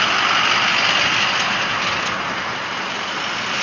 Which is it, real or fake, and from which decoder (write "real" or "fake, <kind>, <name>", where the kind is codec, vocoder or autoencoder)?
real